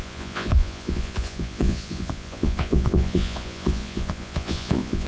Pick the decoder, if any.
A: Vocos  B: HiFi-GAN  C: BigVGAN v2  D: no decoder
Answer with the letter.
A